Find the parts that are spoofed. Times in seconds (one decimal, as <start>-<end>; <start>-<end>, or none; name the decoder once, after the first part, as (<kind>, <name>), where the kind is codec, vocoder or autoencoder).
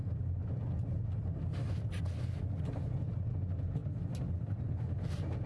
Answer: none